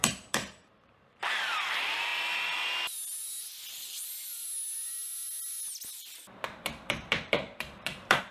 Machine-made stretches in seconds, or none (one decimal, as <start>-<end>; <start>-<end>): 0.0-2.1; 6.6-8.3